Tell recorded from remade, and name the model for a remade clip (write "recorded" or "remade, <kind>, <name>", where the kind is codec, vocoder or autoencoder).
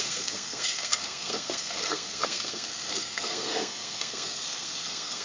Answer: remade, codec, SNAC